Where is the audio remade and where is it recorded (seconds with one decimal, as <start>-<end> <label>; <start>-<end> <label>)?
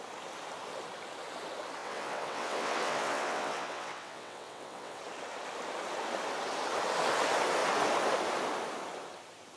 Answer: 0.0-1.8 recorded; 1.8-5.0 remade; 5.0-9.6 recorded